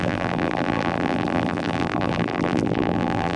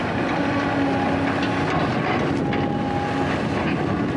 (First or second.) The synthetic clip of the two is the first